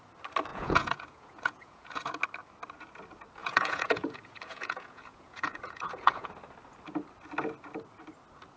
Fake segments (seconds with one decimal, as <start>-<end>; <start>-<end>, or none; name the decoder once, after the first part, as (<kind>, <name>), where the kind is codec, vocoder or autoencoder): 0.5-2.2 (vocoder, Vocos); 3.4-6.3